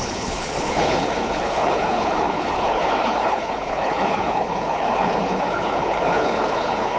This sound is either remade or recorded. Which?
remade